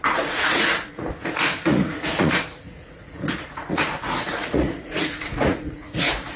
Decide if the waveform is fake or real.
fake